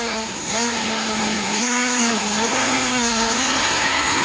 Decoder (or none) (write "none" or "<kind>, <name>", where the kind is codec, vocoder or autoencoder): codec, SNAC